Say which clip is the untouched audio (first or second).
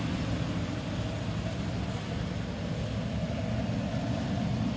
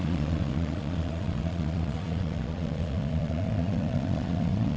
first